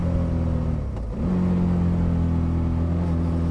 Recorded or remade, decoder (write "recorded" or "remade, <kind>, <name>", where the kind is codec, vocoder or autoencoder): recorded